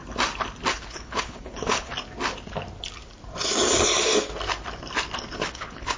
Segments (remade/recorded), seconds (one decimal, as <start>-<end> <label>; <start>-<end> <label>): 0.0-0.7 recorded; 0.7-1.9 remade; 1.9-5.5 recorded; 5.5-6.0 remade

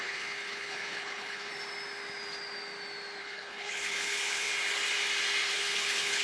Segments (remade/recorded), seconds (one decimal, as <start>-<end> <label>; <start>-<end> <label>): 0.0-1.5 remade; 1.5-3.2 recorded; 3.2-4.5 remade; 4.5-5.5 recorded; 5.5-6.2 remade

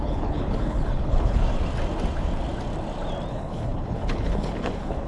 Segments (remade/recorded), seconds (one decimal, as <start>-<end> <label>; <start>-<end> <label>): 0.0-1.4 remade; 1.4-3.3 recorded; 3.3-5.1 remade

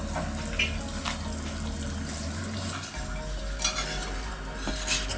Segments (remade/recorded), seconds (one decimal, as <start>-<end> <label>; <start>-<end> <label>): 0.0-5.2 recorded